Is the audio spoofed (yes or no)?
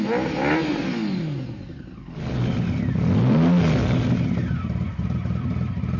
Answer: no